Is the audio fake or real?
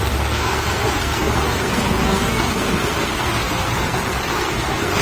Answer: fake